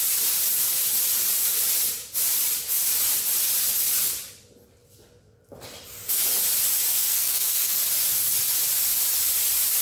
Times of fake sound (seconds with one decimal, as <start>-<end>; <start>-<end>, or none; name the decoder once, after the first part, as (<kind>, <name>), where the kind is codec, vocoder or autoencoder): 6.9-7.8 (codec, SNAC)